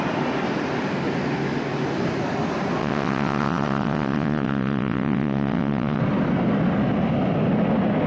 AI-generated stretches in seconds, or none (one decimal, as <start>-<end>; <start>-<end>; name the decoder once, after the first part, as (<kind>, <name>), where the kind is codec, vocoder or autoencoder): 2.8-6.0 (vocoder, WaveNeXt)